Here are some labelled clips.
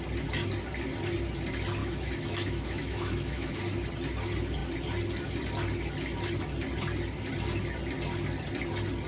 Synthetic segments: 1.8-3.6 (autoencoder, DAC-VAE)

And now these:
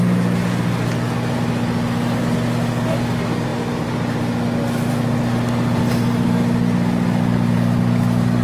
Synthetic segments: none

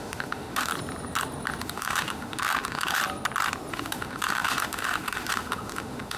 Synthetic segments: 0.0-0.7 (autoencoder, DAC-VAE); 1.6-3.0; 3.7-6.2